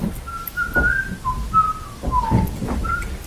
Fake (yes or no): no